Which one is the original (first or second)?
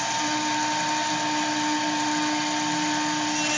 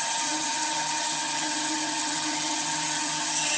first